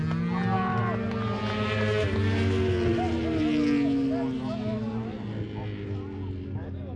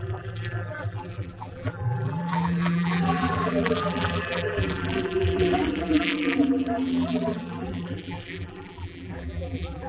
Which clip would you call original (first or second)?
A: first